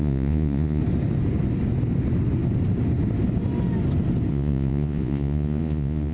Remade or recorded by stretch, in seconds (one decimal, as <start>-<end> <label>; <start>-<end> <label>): 0.0-0.8 remade; 0.8-4.3 recorded; 4.3-6.1 remade